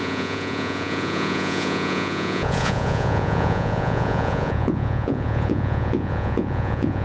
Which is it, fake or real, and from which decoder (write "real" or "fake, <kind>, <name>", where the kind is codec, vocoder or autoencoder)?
fake, vocoder, Vocos